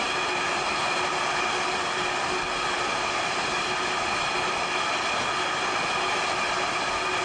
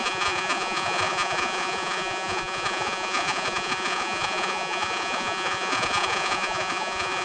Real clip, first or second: first